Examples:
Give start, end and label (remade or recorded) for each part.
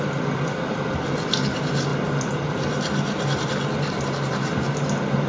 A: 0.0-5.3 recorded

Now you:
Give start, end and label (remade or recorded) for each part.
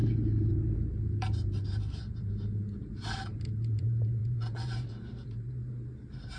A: 0.0-6.4 remade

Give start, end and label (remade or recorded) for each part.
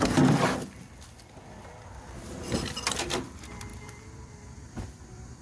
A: 0.0-0.6 remade; 0.6-3.1 recorded; 3.1-5.4 remade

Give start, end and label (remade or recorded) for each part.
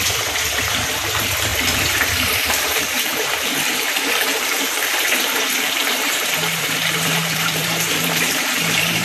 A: 0.0-9.0 remade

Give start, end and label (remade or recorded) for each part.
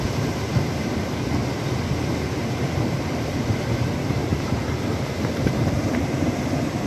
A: 0.0-1.4 remade; 1.4-2.1 recorded; 2.1-6.9 remade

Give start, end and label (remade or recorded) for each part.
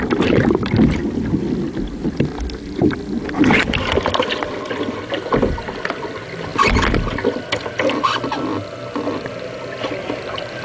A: 0.0-1.0 remade; 1.0-2.6 recorded; 2.6-8.5 remade; 8.5-9.9 recorded; 9.9-10.6 remade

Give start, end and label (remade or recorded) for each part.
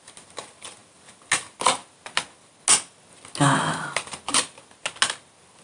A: 0.0-5.6 recorded